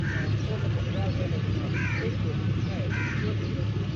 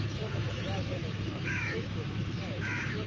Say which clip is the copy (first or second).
second